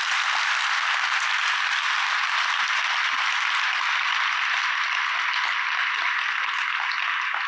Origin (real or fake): real